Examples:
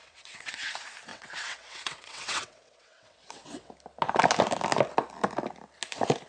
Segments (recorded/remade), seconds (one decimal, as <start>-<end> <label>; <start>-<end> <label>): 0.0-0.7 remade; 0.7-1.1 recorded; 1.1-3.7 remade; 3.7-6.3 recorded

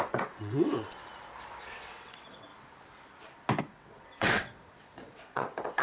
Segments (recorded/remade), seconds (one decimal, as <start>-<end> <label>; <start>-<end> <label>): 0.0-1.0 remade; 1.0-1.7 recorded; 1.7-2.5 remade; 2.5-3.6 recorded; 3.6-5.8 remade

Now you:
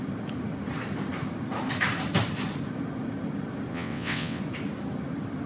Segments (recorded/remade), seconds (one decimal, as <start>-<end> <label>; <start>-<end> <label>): 0.0-3.7 recorded; 3.7-4.4 remade; 4.4-5.5 recorded

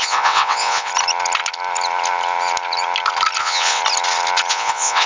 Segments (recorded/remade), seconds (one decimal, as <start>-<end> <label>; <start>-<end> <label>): 0.0-0.9 remade; 0.9-3.4 recorded; 3.4-3.8 remade; 3.8-4.5 recorded; 4.5-5.1 remade

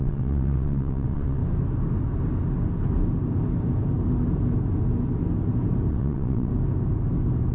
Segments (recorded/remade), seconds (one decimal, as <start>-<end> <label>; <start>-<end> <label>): 0.0-1.4 remade; 1.4-5.9 recorded; 5.9-6.5 remade; 6.5-7.5 recorded

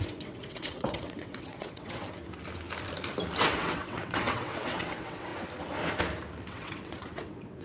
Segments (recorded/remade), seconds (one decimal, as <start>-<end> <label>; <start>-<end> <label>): 0.0-2.0 remade; 2.0-3.4 recorded; 3.4-5.3 remade; 5.3-6.5 recorded; 6.5-7.6 remade

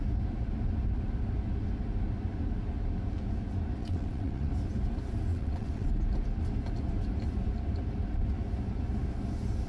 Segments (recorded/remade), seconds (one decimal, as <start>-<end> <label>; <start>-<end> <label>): 0.0-3.8 recorded; 3.8-4.5 remade; 4.5-5.3 recorded; 5.3-5.9 remade; 5.9-9.7 recorded

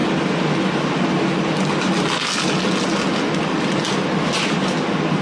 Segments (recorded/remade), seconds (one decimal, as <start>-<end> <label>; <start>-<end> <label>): 0.0-5.2 recorded